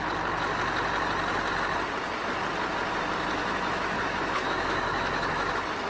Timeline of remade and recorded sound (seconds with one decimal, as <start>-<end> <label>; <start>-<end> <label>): 0.0-3.4 recorded; 3.4-5.5 remade; 5.5-5.9 recorded